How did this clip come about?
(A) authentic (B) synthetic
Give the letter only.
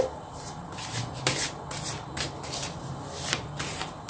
A